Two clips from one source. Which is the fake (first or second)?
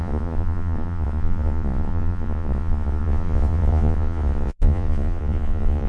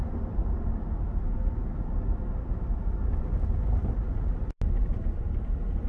first